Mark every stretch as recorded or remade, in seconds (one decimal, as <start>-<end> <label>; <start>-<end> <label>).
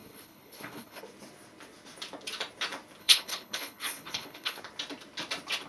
0.0-1.0 remade; 1.0-3.0 recorded; 3.0-4.6 remade; 4.6-5.7 recorded